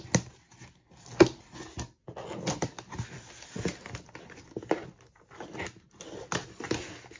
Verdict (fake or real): real